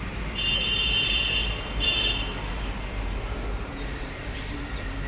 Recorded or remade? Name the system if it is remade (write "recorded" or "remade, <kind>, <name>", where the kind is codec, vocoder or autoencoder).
remade, vocoder, BigVGAN v2